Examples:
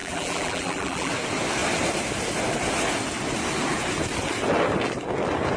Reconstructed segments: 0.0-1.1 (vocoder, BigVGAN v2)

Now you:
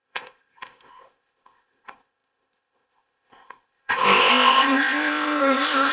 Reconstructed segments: 0.0-5.9 (codec, ZipCodec)

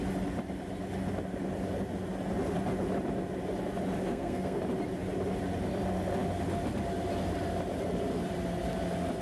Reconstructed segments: 4.1-4.6 (codec, SNAC)

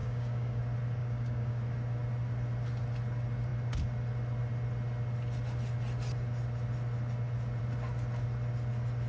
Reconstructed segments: 0.0-0.6 (codec, DAC); 1.0-1.6